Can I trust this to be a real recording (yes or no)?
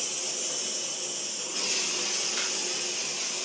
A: no